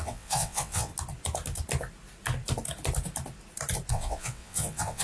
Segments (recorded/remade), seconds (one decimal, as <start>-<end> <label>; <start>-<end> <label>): 0.0-0.9 remade; 0.9-3.9 recorded; 3.9-5.0 remade